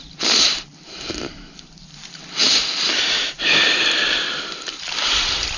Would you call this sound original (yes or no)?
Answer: no